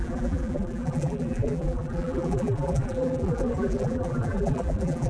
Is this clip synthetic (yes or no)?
yes